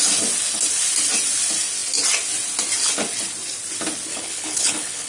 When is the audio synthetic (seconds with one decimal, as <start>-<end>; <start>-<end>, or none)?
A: 4.1-5.1